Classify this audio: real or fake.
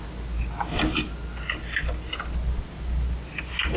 real